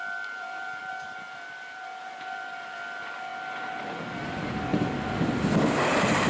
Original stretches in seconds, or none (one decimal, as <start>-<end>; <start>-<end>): 0.8-2.0; 3.3-4.1; 4.7-6.3